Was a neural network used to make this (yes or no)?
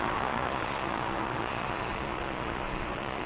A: yes